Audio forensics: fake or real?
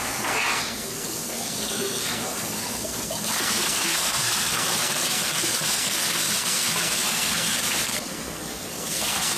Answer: fake